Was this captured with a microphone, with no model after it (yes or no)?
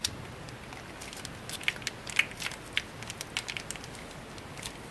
yes